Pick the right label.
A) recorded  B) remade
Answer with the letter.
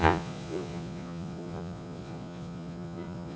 B